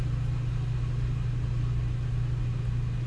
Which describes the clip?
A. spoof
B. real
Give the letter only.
B